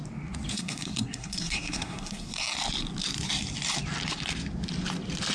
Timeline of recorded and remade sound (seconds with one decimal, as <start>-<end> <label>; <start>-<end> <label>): 0.0-0.5 recorded; 0.5-2.3 remade; 2.3-5.3 recorded

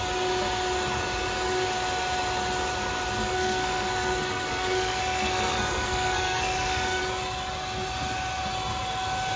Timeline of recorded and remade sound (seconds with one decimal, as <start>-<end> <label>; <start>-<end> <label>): 0.0-3.2 recorded; 3.2-7.0 remade; 7.0-9.4 recorded

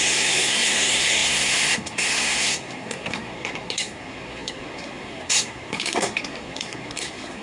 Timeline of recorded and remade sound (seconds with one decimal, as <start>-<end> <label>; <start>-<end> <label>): 0.0-7.4 remade

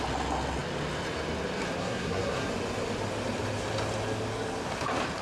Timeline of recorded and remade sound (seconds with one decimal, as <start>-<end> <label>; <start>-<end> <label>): 0.0-1.8 recorded; 1.8-2.5 remade; 2.5-5.2 recorded

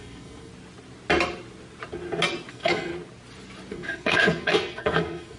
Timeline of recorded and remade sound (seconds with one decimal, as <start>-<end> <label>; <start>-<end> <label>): 0.0-0.5 remade; 0.5-2.5 recorded; 2.5-2.9 remade; 2.9-3.7 recorded; 3.7-5.4 remade